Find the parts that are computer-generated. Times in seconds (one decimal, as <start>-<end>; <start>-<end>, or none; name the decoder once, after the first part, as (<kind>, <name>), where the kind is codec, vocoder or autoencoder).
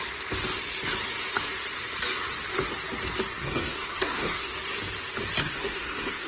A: 3.4-4.5 (codec, SNAC); 5.4-6.3